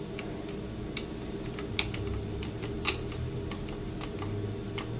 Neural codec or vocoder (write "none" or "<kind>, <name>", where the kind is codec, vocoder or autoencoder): none